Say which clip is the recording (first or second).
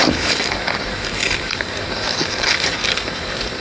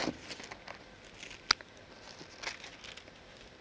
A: second